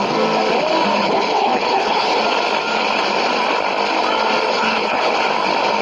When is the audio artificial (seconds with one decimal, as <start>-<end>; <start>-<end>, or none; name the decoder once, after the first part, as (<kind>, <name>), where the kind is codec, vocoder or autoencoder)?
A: 1.0-2.2 (codec, HILCodec); 4.5-5.1